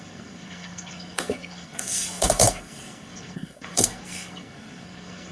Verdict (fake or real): fake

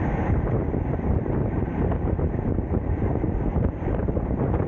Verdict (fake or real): fake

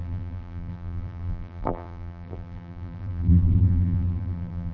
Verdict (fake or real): fake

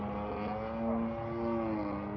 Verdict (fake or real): real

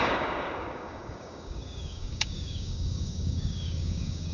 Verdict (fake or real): fake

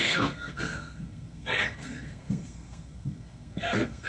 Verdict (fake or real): fake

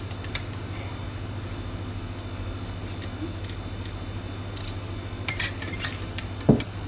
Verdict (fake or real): real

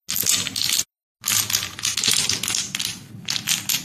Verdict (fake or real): real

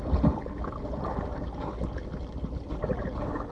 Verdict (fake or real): real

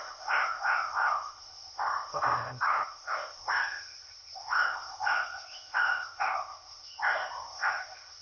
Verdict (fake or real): fake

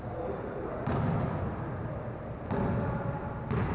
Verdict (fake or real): real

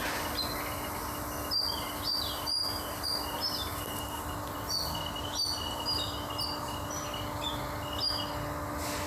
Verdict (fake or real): real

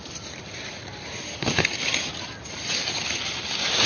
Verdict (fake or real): real